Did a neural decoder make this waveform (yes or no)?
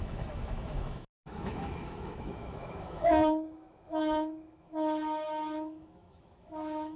yes